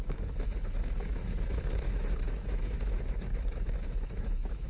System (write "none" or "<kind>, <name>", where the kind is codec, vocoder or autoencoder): autoencoder, DAC-VAE